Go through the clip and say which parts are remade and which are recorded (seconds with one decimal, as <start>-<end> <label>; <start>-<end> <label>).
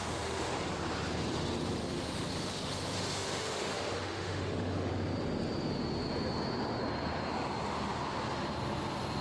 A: 0.0-0.5 remade; 0.5-1.8 recorded; 1.8-4.9 remade; 4.9-9.2 recorded